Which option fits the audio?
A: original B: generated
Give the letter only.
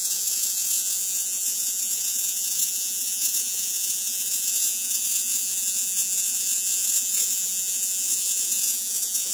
B